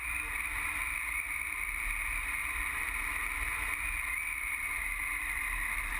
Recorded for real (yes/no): yes